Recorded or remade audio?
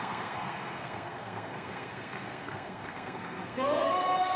remade